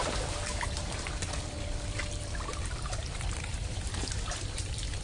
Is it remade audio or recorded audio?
remade